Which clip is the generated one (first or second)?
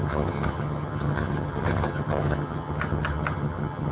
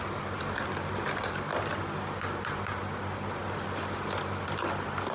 first